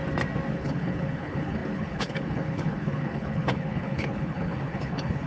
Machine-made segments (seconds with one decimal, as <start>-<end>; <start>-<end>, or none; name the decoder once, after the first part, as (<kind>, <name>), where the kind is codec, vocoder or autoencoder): 0.5-5.3 (codec, HILCodec)